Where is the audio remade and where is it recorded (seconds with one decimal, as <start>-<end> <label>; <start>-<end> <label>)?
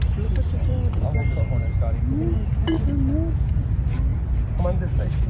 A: 0.0-5.3 recorded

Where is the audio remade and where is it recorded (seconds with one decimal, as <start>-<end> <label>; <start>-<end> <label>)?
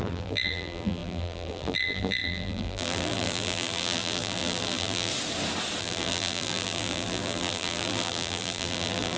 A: 0.0-5.1 remade; 5.1-5.8 recorded; 5.8-9.2 remade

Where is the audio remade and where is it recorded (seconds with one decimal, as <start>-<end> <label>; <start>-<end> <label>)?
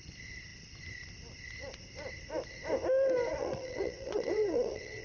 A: 0.0-3.3 recorded; 3.3-5.0 remade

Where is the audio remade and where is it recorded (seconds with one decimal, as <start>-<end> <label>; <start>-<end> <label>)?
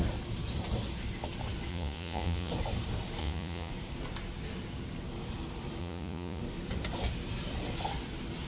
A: 0.0-1.7 recorded; 1.7-2.5 remade; 2.5-3.2 recorded; 3.2-3.7 remade; 3.7-5.8 recorded; 5.8-6.4 remade; 6.4-8.5 recorded